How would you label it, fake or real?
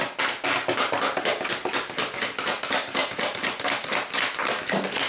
real